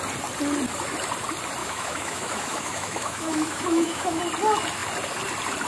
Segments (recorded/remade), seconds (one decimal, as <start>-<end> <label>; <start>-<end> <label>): 0.0-1.6 recorded; 1.6-4.2 remade; 4.2-5.7 recorded